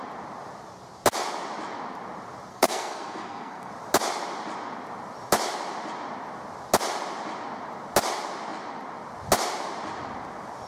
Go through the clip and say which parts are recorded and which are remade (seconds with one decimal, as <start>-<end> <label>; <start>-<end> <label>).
0.0-2.5 recorded; 2.5-3.7 remade; 3.7-10.7 recorded

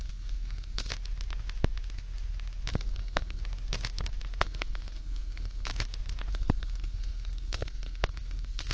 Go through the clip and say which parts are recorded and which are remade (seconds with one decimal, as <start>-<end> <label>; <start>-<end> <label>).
0.0-0.9 remade; 0.9-2.7 recorded; 2.7-3.4 remade; 3.4-4.4 recorded; 4.4-5.7 remade; 5.7-6.3 recorded; 6.3-8.7 remade

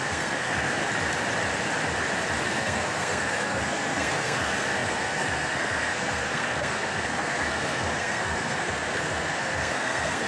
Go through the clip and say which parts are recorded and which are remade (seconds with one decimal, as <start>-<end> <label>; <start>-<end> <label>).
0.0-0.8 remade; 0.8-2.4 recorded; 2.4-10.3 remade

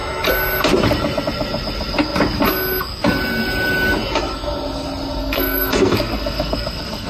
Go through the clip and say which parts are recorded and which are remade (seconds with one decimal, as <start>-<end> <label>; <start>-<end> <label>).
0.0-5.2 recorded; 5.2-7.1 remade